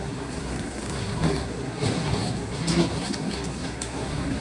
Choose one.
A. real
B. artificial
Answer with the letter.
B